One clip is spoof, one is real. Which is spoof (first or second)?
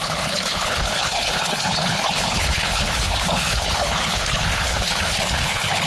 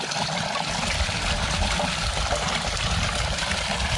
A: first